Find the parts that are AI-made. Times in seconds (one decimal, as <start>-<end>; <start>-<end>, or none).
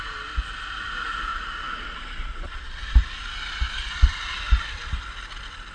1.3-2.8